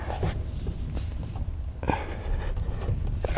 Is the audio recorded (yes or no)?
no